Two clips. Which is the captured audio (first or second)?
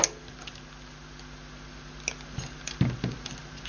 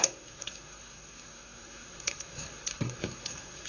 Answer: first